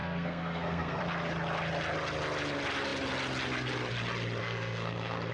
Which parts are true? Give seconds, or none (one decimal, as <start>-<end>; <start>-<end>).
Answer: 1.0-4.4